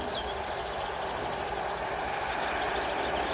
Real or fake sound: real